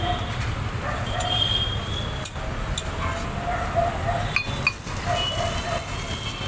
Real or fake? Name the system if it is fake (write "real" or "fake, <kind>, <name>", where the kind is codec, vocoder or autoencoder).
real